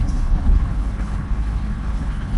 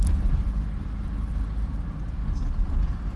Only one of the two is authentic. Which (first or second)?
second